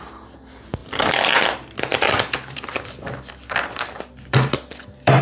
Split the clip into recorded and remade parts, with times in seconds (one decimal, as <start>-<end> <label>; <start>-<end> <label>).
0.0-1.9 recorded; 1.9-5.2 remade